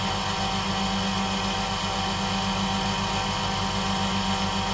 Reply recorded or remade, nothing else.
recorded